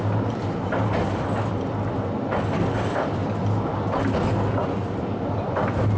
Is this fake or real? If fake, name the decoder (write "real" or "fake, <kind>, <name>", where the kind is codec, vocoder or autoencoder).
real